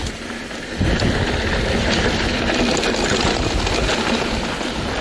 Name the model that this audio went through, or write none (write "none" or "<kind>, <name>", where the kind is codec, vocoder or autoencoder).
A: none